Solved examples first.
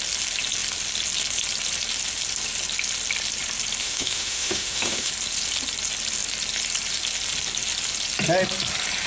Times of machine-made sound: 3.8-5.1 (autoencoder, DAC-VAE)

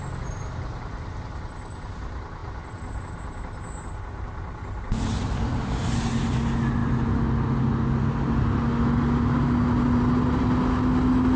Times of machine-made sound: none

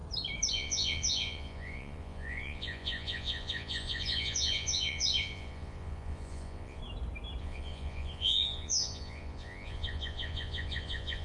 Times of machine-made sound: 0.5-6.8 (vocoder, Vocos); 7.4-11.2